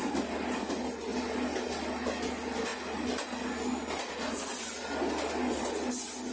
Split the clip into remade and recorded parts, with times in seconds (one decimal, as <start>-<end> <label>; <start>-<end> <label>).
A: 0.0-6.3 recorded